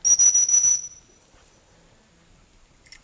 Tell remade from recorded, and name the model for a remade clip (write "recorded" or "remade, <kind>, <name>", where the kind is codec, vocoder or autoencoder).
recorded